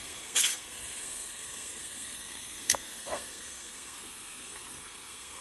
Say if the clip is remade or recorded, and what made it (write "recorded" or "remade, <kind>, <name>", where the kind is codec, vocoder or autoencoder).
remade, codec, SNAC